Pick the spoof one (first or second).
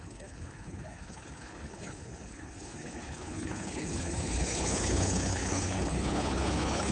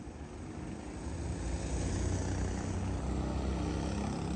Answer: first